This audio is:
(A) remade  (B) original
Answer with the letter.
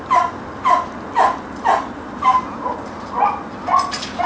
B